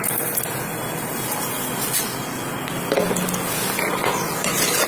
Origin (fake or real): real